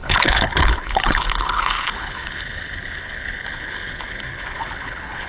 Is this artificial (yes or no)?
yes